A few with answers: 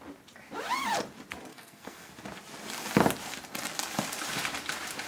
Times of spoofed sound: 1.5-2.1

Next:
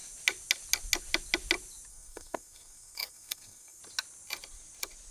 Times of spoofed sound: 1.9-3.8

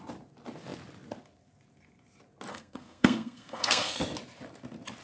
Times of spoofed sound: 2.5-4.0

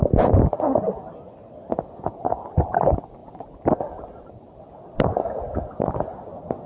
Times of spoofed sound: none

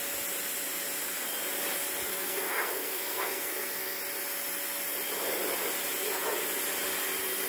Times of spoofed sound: 2.1-4.0

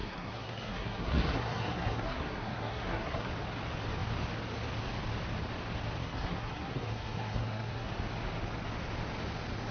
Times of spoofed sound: 0.0-3.3; 6.0-7.9